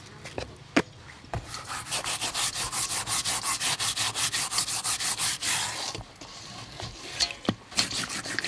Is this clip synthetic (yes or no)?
no